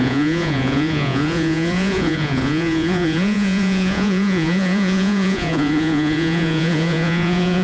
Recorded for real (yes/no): no